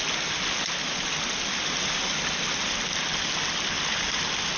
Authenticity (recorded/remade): recorded